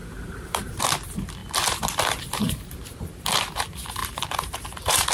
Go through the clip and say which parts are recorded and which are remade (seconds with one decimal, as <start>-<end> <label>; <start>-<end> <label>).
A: 0.0-0.8 remade; 0.8-4.0 recorded; 4.0-5.1 remade